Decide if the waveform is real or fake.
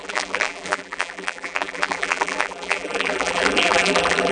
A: fake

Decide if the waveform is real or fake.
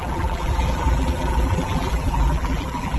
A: fake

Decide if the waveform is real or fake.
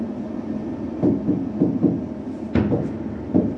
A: real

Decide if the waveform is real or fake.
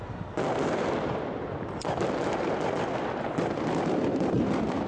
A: real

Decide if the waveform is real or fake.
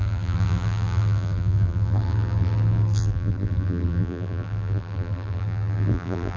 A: fake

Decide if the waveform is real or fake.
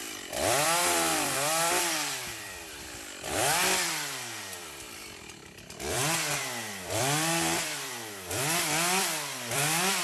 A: fake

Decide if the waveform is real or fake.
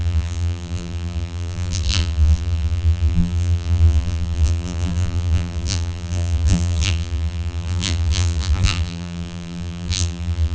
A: fake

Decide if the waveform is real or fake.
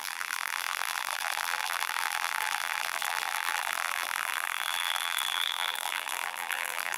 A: fake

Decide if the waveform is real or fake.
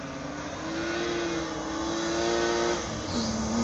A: real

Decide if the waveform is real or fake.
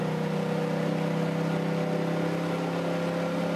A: real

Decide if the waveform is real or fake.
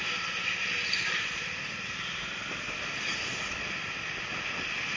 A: real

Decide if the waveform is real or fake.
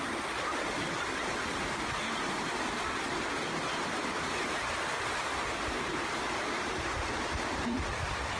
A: real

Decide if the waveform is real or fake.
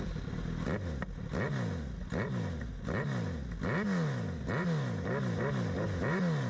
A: real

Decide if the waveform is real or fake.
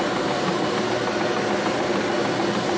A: real